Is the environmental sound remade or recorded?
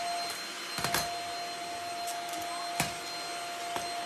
recorded